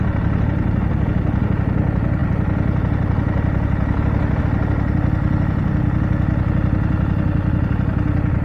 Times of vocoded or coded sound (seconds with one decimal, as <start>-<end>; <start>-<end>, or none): none